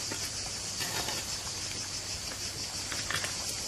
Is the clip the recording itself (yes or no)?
yes